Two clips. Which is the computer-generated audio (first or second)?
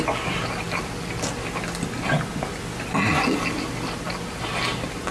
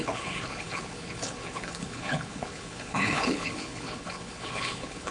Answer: second